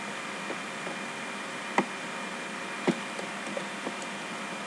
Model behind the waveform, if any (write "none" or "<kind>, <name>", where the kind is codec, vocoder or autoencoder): none